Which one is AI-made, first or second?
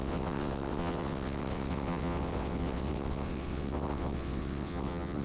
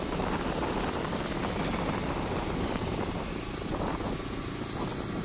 first